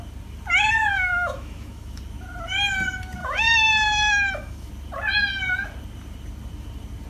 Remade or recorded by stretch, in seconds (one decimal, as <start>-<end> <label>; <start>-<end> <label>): 0.0-0.9 recorded; 0.9-2.0 remade; 2.0-3.2 recorded; 3.2-4.7 remade; 4.7-7.1 recorded